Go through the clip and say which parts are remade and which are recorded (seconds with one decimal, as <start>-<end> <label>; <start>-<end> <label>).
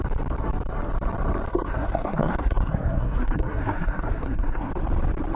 0.0-1.5 recorded; 1.5-4.7 remade; 4.7-5.4 recorded